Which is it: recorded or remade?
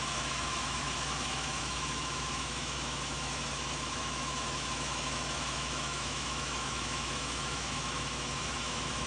remade